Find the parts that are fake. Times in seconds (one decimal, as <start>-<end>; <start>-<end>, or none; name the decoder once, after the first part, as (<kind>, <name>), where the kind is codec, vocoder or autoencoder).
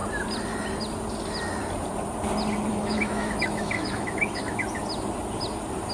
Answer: 2.7-4.6 (autoencoder, DAC-VAE)